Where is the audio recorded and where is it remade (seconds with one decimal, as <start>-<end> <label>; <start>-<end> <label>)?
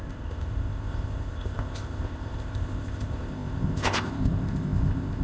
0.0-5.2 remade